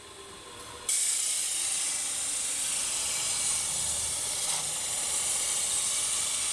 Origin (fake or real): real